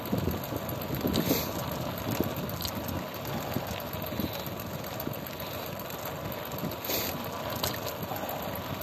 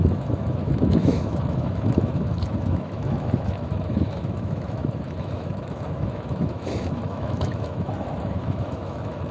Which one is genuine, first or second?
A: first